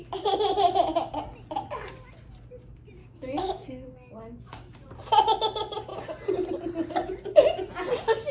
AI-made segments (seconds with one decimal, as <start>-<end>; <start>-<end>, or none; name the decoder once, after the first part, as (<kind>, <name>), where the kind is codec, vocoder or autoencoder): 3.0-4.7 (codec, DAC)